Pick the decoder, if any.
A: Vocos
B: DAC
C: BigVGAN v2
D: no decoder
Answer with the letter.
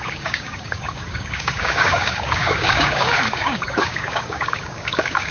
B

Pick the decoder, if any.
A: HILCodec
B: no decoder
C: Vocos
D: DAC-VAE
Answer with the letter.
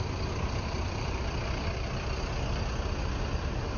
B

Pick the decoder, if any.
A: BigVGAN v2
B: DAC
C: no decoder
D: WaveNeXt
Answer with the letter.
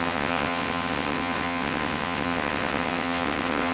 D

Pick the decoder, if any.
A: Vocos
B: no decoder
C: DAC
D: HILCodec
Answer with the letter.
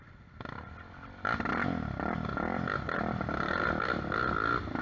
B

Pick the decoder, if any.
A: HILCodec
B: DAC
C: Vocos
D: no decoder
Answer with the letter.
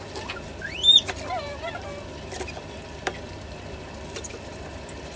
D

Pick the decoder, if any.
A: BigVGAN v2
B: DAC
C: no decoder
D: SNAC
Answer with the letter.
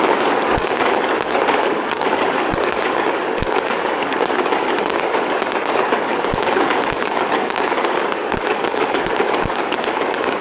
B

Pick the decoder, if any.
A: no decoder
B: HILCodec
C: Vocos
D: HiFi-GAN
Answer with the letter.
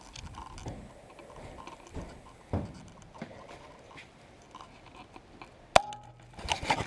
A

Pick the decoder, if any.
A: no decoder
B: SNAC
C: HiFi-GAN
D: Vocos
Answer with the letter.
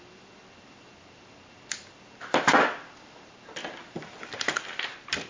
A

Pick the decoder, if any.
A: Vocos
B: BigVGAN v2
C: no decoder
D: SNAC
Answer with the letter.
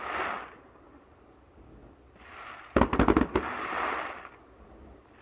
C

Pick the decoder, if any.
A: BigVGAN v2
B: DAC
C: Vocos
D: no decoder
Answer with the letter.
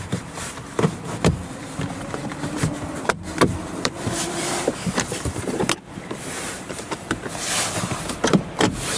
A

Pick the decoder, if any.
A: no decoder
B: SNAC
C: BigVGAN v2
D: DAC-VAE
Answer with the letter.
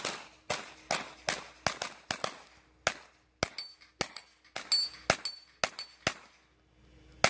A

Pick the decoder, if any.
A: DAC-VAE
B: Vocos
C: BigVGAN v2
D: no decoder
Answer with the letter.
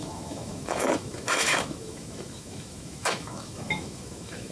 A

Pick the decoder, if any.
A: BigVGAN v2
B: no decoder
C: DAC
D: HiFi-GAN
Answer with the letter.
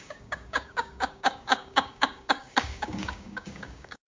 C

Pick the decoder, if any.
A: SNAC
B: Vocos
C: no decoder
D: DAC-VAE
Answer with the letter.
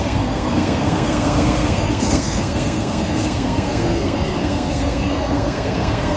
A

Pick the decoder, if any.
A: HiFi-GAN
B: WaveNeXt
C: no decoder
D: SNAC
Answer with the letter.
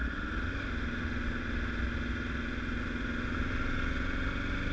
C